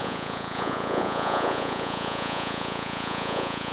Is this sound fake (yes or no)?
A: yes